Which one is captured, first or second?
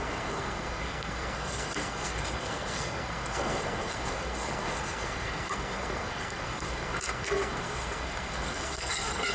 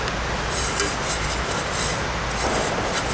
second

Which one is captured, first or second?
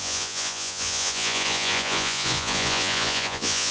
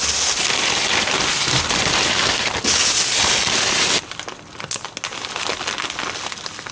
second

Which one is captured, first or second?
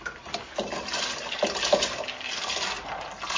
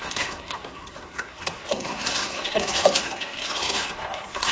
first